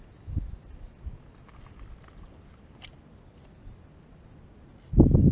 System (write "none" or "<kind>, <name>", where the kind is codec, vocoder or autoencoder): none